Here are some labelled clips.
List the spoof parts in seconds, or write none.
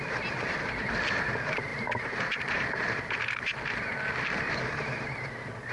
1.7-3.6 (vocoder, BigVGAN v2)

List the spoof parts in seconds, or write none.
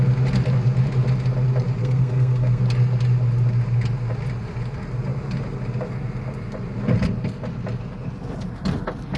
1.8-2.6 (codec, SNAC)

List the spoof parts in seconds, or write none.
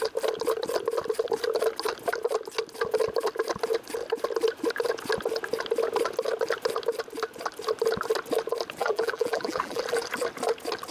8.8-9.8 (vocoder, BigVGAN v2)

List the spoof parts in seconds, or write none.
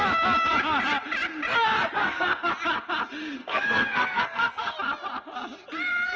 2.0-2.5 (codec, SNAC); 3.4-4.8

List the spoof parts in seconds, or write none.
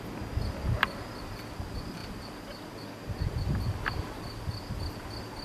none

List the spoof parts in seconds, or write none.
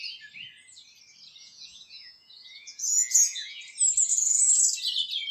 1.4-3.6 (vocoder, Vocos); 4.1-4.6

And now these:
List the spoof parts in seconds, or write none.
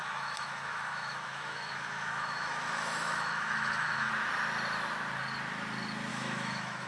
0.0-4.1 (autoencoder, DAC-VAE); 6.1-6.9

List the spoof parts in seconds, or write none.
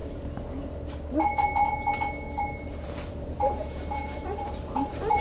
3.1-5.2 (vocoder, BigVGAN v2)